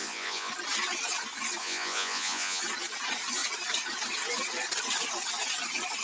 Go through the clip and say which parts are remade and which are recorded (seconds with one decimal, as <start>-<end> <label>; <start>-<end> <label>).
0.0-0.5 remade; 0.5-1.6 recorded; 1.6-2.6 remade; 2.6-6.0 recorded